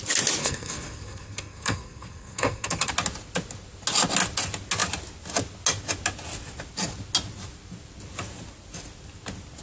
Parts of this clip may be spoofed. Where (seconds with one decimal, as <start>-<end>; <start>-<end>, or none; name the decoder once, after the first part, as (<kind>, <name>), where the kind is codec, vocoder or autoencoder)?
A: 0.4-2.9 (codec, SNAC)

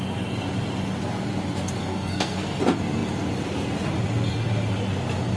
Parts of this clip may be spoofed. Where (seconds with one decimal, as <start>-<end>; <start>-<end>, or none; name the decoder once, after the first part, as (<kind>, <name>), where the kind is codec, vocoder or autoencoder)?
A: 1.9-2.6 (codec, SNAC)

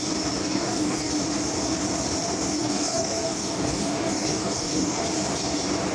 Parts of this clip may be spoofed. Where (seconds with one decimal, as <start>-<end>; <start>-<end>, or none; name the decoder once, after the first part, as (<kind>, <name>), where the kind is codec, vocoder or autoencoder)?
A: 0.4-1.1 (codec, DAC); 2.6-5.0

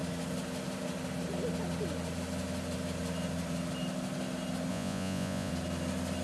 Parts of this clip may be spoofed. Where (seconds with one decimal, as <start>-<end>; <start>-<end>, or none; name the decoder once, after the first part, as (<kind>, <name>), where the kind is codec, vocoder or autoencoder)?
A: 4.7-5.5 (vocoder, Vocos)

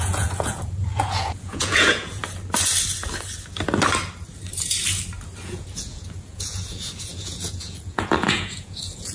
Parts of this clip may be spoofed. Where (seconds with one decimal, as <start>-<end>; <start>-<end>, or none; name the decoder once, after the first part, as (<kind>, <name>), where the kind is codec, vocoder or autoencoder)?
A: 0.0-2.2 (vocoder, Vocos); 5.4-9.1

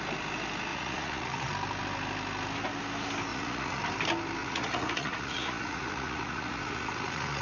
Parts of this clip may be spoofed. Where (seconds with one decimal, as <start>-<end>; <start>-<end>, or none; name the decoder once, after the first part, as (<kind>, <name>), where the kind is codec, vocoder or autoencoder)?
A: 0.7-1.5 (vocoder, Vocos); 3.3-3.8; 4.4-7.4

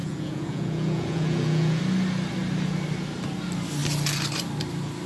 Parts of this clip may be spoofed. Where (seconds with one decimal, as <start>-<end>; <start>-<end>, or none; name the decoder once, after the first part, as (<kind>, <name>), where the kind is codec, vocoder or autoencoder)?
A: 0.0-1.8 (vocoder, Vocos)

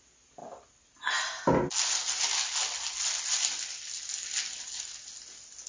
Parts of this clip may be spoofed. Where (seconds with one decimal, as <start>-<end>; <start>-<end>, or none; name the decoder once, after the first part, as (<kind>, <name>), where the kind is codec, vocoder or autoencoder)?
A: none